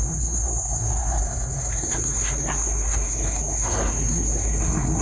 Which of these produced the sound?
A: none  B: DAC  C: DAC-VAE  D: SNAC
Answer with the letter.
D